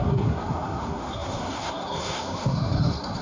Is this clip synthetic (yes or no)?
yes